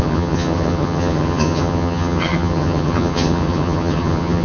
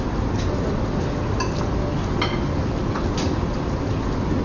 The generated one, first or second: first